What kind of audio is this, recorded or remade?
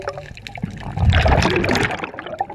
recorded